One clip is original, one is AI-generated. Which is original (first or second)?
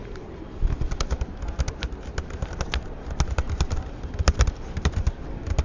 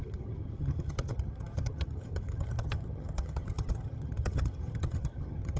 first